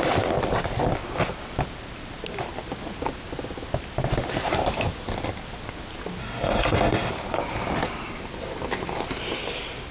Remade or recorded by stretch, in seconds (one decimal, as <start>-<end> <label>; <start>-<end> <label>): 0.0-6.2 recorded; 6.2-7.1 remade; 7.1-9.9 recorded